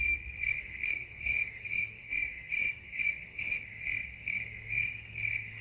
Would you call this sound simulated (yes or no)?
yes